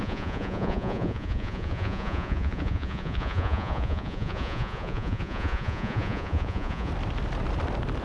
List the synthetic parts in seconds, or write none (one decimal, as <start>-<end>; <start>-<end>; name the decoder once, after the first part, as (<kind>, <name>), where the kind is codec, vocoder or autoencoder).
0.0-6.9 (vocoder, Vocos)